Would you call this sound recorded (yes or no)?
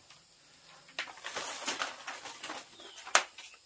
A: yes